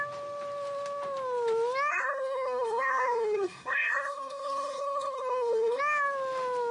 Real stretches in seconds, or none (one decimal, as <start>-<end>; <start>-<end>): 0.0-1.9; 5.8-6.7